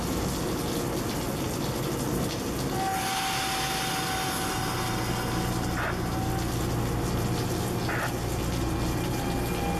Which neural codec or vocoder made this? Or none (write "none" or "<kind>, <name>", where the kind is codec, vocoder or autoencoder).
none